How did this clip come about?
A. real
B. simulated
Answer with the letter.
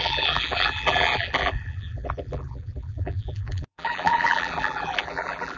B